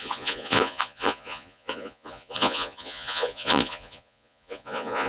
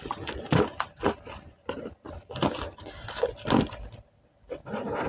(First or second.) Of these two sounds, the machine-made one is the first